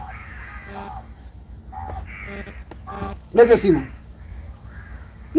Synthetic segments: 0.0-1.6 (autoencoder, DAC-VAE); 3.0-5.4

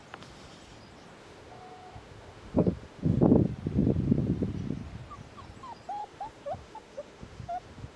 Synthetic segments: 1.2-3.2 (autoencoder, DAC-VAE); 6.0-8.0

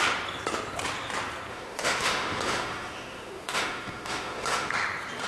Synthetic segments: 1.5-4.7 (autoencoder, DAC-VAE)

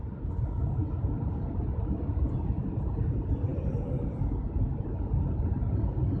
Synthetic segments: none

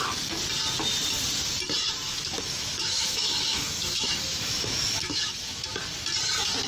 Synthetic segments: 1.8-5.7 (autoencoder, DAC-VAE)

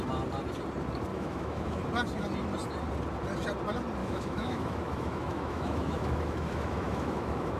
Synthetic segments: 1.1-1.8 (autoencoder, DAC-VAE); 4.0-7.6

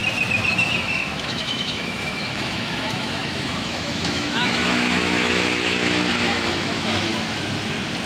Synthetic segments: 0.5-7.1 (autoencoder, DAC-VAE)

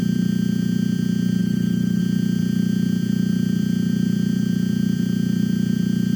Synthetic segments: 1.4-2.0 (autoencoder, DAC-VAE)